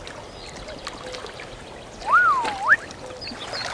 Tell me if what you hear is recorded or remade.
recorded